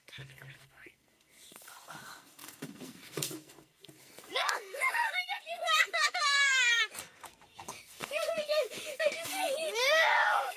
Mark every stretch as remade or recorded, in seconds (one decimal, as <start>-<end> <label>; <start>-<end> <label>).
0.0-10.6 remade